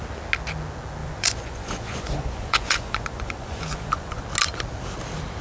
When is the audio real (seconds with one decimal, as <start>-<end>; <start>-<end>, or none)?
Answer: 0.0-1.0; 4.2-5.4